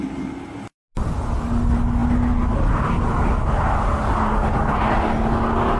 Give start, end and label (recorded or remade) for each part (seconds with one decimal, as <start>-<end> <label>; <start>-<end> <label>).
0.0-5.8 recorded

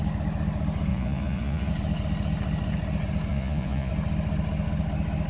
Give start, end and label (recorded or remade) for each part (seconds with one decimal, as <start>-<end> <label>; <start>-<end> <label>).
0.0-0.9 recorded; 0.9-1.7 remade; 1.7-3.3 recorded; 3.3-3.9 remade; 3.9-5.3 recorded

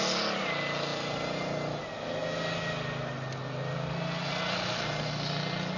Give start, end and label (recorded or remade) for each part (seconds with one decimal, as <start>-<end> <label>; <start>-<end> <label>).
0.0-5.8 recorded